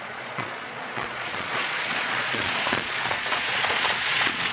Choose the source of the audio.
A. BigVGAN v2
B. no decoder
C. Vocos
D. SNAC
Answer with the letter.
C